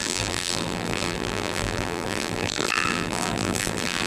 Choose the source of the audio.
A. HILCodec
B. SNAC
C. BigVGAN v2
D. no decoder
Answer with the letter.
C